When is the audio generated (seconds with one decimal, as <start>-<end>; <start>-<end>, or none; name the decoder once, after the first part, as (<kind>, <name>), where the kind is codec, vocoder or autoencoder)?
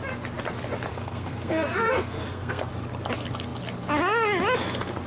0.9-2.7 (codec, SNAC)